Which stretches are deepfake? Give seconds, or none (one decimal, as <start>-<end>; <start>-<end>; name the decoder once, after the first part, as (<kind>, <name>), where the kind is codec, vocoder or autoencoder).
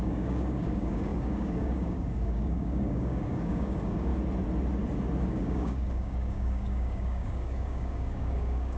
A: 0.0-4.1 (codec, DAC); 5.3-8.8